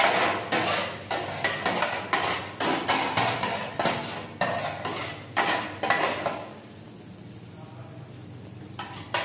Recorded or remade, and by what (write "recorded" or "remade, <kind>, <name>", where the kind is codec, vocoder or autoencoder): recorded